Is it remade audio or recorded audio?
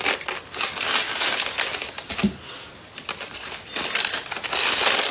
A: recorded